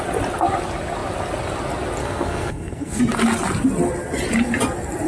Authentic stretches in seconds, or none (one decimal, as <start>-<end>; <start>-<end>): 0.0-2.0; 3.0-5.1